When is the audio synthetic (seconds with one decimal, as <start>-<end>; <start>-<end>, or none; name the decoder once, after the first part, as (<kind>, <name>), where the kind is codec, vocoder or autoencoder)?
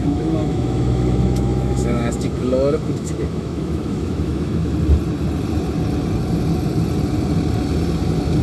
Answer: 0.0-4.7 (autoencoder, DAC-VAE)